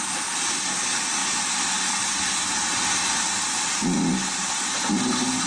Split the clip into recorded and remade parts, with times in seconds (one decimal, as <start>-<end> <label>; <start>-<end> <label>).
0.0-5.5 recorded